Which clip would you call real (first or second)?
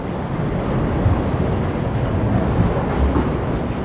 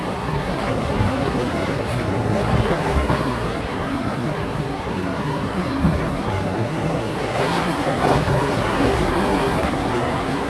first